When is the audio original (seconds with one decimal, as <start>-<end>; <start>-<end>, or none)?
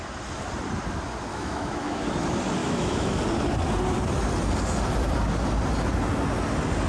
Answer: 0.0-1.3; 2.1-2.6; 3.2-6.9